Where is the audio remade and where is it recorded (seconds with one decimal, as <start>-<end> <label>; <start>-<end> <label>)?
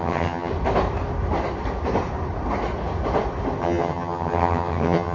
0.0-0.5 remade; 0.5-3.6 recorded; 3.6-5.1 remade